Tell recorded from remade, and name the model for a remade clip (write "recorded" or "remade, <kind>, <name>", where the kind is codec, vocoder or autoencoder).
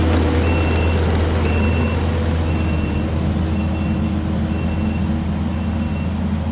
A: recorded